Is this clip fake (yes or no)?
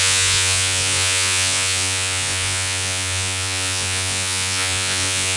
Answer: yes